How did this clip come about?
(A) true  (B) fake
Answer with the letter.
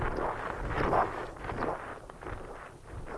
A